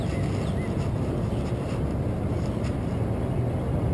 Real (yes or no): yes